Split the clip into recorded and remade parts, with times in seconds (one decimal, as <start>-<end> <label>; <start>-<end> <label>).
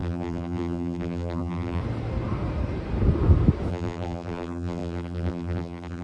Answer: 0.0-1.8 remade; 1.8-3.7 recorded; 3.7-6.0 remade